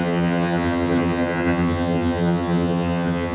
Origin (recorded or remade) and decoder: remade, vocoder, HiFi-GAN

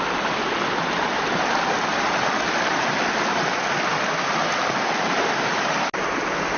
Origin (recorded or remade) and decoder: recorded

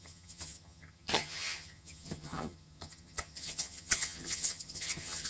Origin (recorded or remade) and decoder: remade, vocoder, HiFi-GAN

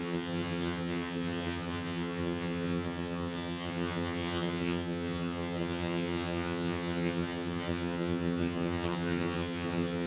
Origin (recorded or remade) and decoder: remade, vocoder, HiFi-GAN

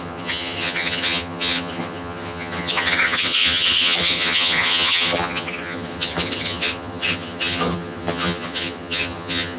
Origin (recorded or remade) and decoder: remade, vocoder, HiFi-GAN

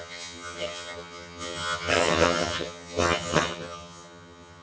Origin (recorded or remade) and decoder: remade, vocoder, HiFi-GAN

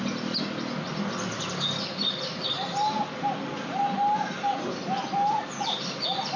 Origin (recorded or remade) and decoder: recorded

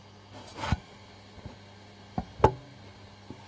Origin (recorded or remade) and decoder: recorded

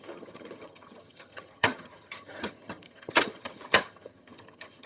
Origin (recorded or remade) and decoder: remade, vocoder, HiFi-GAN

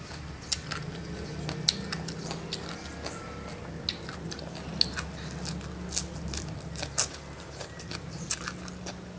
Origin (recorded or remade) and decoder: recorded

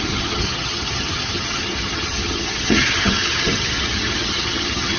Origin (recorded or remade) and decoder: remade, vocoder, HiFi-GAN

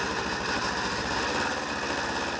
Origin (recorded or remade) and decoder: recorded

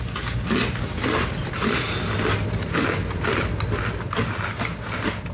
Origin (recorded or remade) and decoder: recorded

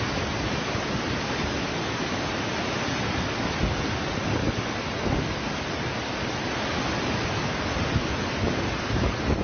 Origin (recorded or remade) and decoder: recorded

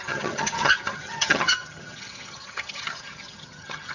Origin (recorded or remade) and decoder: remade, vocoder, HiFi-GAN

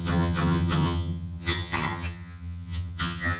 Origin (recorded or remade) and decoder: remade, vocoder, HiFi-GAN